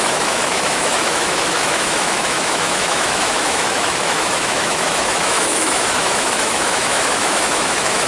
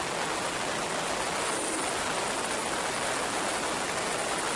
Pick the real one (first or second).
second